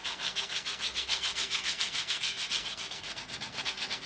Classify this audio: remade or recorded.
remade